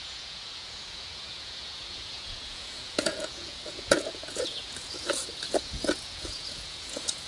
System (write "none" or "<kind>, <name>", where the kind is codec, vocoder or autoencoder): vocoder, Vocos